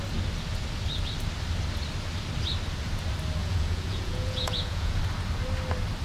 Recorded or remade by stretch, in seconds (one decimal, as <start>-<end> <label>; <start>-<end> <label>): 0.0-3.4 recorded; 3.4-5.0 remade; 5.0-6.0 recorded

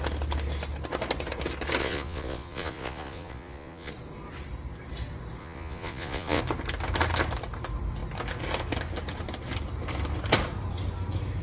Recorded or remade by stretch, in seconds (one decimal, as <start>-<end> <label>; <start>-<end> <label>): 0.0-1.8 recorded; 1.8-3.9 remade; 3.9-5.4 recorded; 5.4-6.4 remade; 6.4-11.4 recorded

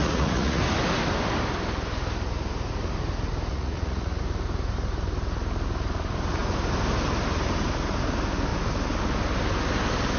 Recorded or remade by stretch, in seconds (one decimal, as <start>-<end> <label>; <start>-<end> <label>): 0.0-0.6 remade; 0.6-3.5 recorded; 3.5-4.2 remade; 4.2-10.2 recorded

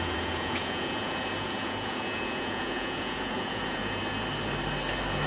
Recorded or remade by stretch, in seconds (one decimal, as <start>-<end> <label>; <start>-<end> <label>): 0.0-4.0 remade; 4.0-5.3 recorded

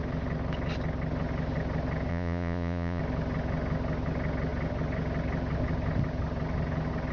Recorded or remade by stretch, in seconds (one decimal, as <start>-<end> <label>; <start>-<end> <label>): 0.0-2.1 recorded; 2.1-3.0 remade; 3.0-7.1 recorded

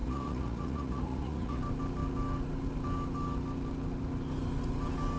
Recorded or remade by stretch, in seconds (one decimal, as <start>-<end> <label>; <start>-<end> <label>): 0.0-1.6 remade; 1.6-5.2 recorded

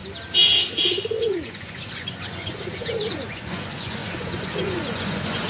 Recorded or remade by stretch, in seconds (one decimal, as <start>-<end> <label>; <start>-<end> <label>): 0.0-1.2 recorded; 1.2-5.5 remade